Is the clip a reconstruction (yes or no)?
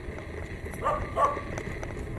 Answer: no